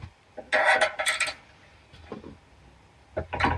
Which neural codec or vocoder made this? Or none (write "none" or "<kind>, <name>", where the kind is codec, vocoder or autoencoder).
none